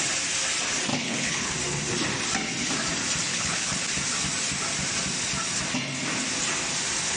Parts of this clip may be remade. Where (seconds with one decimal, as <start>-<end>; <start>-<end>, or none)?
0.9-1.5; 3.3-3.8